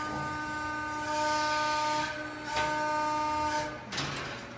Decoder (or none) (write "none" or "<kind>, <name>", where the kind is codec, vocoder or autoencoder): none